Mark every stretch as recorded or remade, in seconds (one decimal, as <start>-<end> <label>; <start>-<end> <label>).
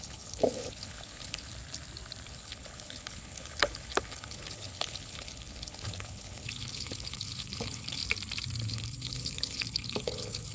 0.0-1.5 remade; 1.5-2.3 recorded; 2.3-8.0 remade; 8.0-8.7 recorded; 8.7-10.5 remade